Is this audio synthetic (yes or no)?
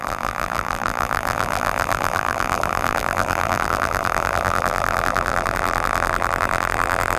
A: yes